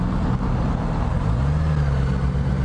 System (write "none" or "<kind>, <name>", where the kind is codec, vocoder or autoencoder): none